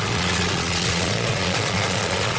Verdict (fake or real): fake